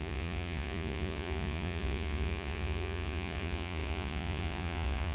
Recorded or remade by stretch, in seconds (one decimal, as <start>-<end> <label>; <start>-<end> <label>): 0.0-5.1 remade